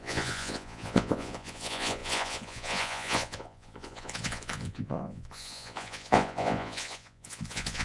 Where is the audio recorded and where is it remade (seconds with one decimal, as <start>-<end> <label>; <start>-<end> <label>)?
0.0-7.8 remade